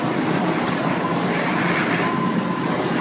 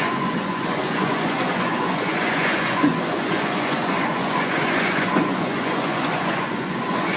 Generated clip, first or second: second